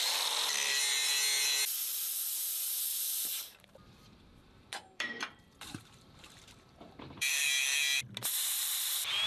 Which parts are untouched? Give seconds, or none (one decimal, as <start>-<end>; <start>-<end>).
0.0-2.9; 7.4-9.3